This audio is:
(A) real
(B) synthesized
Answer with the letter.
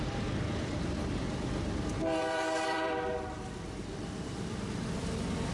B